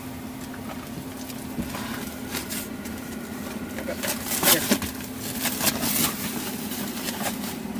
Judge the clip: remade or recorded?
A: recorded